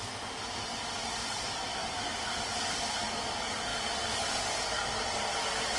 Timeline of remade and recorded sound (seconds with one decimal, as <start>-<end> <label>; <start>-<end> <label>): 0.0-5.8 recorded